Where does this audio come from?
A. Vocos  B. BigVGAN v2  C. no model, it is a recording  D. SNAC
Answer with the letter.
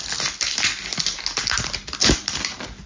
C